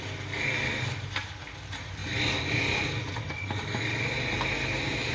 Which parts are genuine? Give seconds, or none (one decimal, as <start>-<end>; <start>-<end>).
0.0-5.1